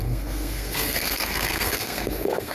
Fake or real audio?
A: fake